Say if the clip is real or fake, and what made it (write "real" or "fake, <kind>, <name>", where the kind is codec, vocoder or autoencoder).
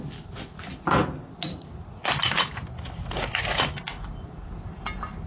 real